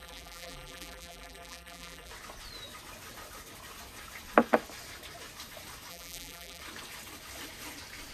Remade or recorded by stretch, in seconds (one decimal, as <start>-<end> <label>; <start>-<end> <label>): 0.0-2.1 remade; 2.1-5.9 recorded; 5.9-6.6 remade; 6.6-8.1 recorded

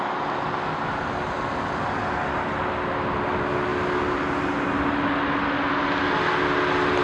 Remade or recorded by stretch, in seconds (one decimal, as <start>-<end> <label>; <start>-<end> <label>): 0.0-7.0 recorded